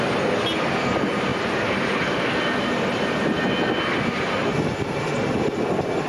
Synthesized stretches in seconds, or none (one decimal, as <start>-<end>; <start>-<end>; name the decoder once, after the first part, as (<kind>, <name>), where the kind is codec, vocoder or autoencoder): 1.3-3.4 (vocoder, BigVGAN v2)